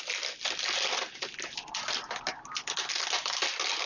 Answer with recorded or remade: recorded